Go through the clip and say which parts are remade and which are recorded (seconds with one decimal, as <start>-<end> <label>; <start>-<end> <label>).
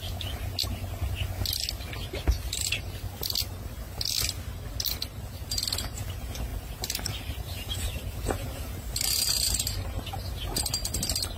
0.0-6.5 recorded; 6.5-10.6 remade; 10.6-11.4 recorded